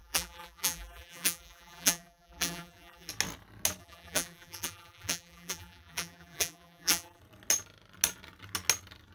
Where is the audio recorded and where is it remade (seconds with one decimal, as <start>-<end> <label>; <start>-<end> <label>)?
0.0-3.1 remade; 3.1-3.8 recorded; 3.8-7.2 remade; 7.2-9.1 recorded